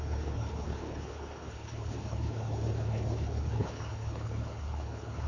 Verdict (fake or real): fake